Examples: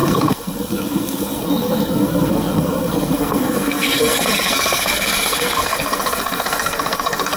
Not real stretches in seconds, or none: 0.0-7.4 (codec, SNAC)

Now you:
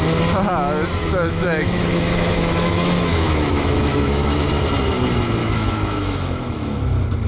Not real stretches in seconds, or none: 1.0-4.5 (autoencoder, DAC-VAE); 5.4-6.8

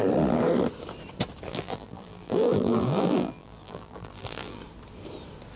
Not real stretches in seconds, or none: 1.5-4.6 (vocoder, BigVGAN v2)

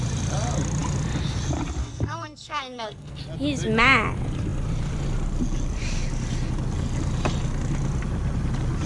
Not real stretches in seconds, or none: 1.8-3.2 (codec, SNAC)

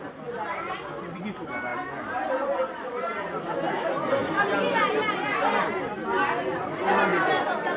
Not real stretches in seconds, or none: none

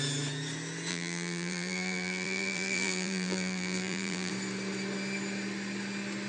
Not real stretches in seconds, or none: 0.9-4.3 (vocoder, BigVGAN v2)

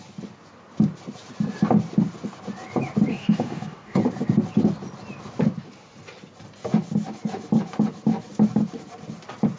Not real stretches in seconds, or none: 3.1-4.0 (codec, DAC)

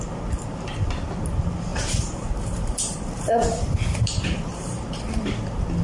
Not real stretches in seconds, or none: 1.7-5.2 (vocoder, BigVGAN v2)